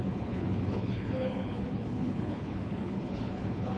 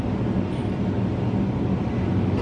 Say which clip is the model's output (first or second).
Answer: first